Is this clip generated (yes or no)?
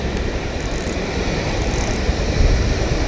no